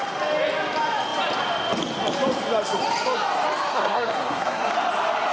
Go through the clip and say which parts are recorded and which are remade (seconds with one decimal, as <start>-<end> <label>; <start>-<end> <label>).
0.0-3.7 recorded; 3.7-4.7 remade; 4.7-5.3 recorded